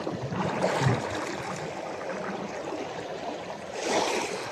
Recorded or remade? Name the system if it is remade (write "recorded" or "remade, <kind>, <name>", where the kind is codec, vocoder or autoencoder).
recorded